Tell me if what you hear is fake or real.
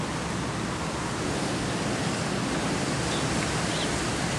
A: real